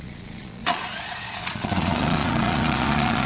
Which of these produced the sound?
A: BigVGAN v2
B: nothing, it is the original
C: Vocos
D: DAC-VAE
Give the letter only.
C